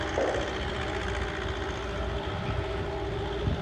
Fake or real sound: real